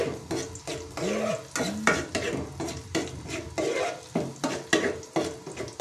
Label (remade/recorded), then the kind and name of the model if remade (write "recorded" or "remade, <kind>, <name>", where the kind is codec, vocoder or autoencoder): recorded